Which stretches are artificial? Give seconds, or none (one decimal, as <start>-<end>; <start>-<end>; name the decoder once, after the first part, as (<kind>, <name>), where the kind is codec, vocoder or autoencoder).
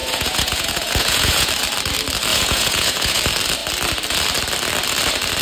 0.0-1.5 (vocoder, Vocos); 2.3-3.2